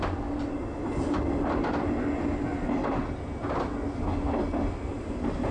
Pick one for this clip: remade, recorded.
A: recorded